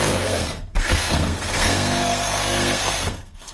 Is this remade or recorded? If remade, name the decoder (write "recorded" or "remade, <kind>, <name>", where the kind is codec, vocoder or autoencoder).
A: remade, codec, SNAC